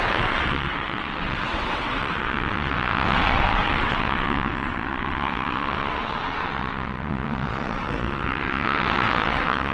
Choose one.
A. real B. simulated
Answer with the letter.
B